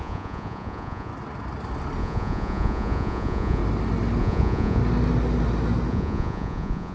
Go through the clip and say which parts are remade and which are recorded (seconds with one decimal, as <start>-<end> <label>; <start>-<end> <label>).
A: 0.0-1.1 remade; 1.1-2.0 recorded; 2.0-3.6 remade; 3.6-4.2 recorded; 4.2-4.8 remade; 4.8-5.9 recorded; 5.9-6.9 remade